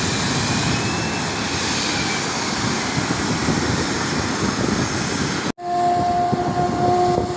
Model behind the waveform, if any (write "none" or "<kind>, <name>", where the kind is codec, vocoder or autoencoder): none